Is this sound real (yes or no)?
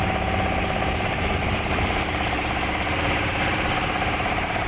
no